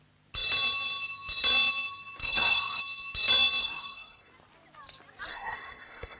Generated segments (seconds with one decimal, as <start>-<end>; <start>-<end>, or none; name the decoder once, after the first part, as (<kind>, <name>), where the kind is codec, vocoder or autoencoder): 2.2-2.8 (codec, SNAC); 3.6-4.3; 5.3-6.2